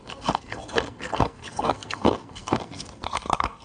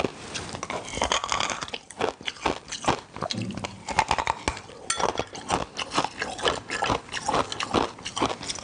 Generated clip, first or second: first